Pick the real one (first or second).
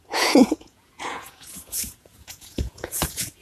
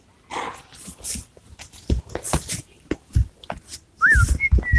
second